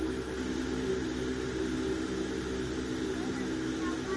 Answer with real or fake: real